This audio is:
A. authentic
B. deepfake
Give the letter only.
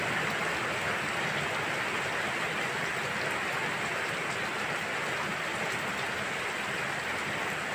A